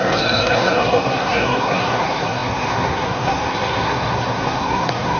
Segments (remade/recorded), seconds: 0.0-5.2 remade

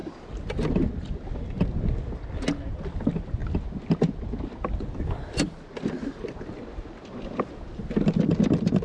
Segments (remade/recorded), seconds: 0.0-8.8 recorded

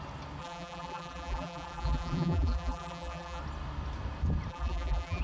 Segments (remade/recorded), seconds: 0.0-0.4 recorded; 0.4-3.4 remade; 3.4-4.5 recorded; 4.5-5.2 remade

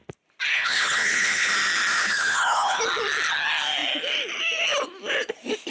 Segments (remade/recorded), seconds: 0.0-0.5 recorded; 0.5-1.5 remade; 1.5-2.0 recorded; 2.0-2.8 remade; 2.8-5.7 recorded

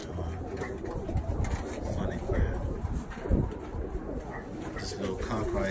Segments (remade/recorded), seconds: 0.0-3.4 remade; 3.4-5.7 recorded

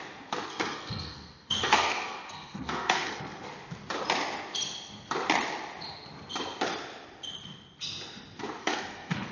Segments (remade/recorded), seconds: 0.0-0.5 recorded; 0.5-3.5 remade; 3.5-8.6 recorded; 8.6-9.3 remade